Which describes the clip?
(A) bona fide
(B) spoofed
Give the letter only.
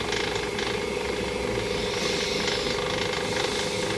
A